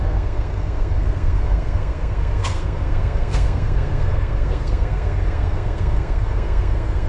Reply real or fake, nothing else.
fake